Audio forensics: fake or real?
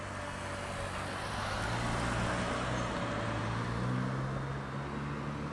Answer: real